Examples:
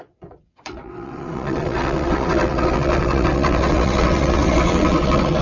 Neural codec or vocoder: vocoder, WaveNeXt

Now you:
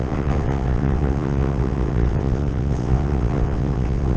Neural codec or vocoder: vocoder, WaveNeXt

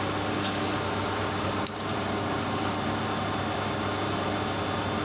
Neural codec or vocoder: none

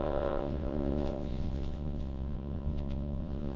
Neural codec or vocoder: vocoder, WaveNeXt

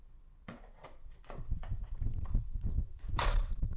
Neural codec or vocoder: vocoder, WaveNeXt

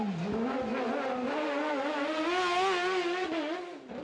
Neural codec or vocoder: none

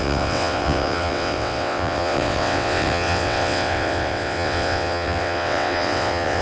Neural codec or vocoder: vocoder, WaveNeXt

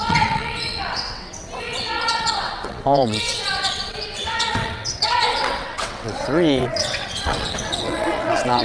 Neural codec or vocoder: vocoder, WaveNeXt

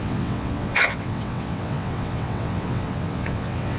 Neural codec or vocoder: vocoder, WaveNeXt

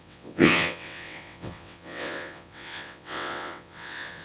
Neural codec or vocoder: vocoder, WaveNeXt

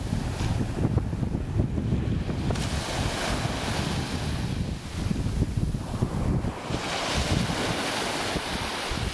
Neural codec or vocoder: none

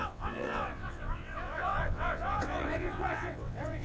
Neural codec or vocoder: vocoder, WaveNeXt